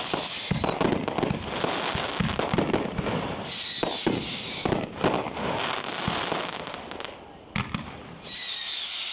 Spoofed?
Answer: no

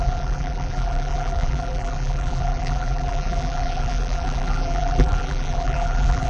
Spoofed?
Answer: yes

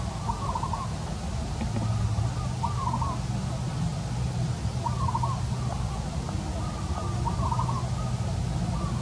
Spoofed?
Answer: no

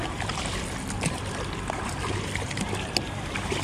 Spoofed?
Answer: no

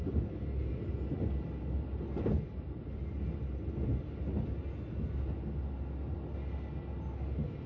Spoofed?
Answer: no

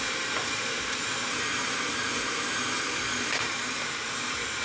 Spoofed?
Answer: yes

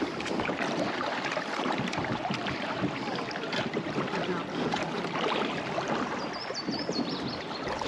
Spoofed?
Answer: yes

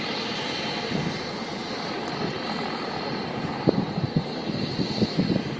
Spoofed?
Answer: yes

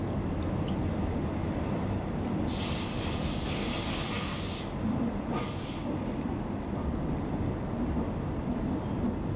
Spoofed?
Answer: no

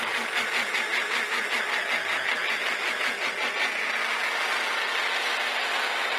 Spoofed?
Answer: no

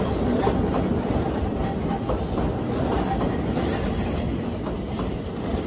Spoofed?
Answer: no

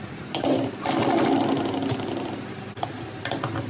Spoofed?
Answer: no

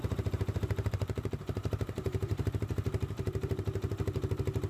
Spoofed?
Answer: yes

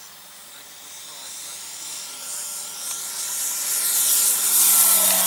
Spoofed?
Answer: no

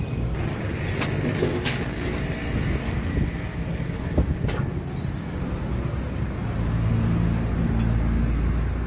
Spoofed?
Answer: no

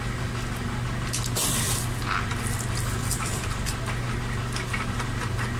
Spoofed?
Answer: no